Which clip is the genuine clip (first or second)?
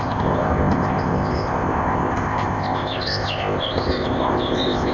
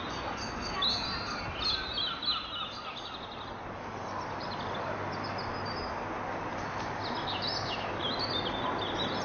second